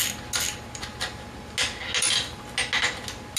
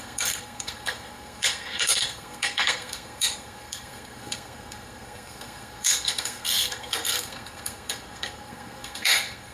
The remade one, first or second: second